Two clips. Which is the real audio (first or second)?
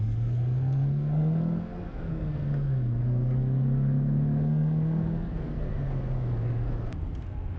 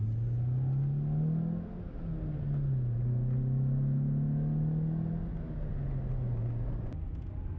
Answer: second